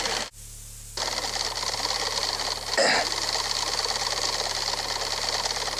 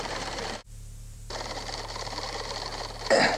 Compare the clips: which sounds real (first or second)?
first